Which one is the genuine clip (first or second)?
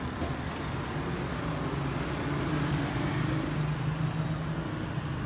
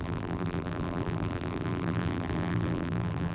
first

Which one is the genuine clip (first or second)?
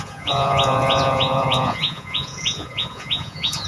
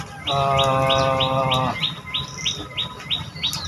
second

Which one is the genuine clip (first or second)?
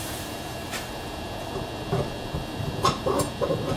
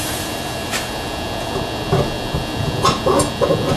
second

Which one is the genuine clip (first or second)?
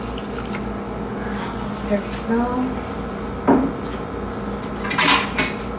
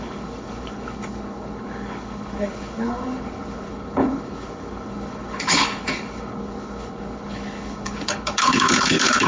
first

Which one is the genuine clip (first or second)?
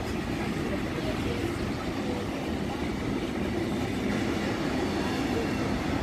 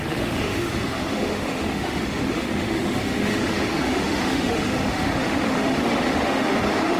first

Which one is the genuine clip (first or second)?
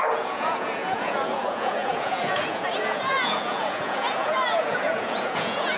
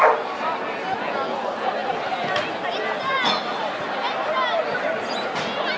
second